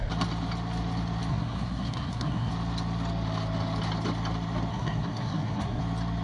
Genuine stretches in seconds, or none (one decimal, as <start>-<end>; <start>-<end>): 0.0-1.3; 2.5-4.7; 5.8-6.2